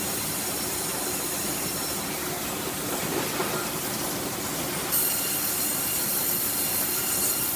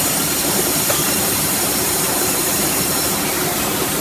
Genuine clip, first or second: first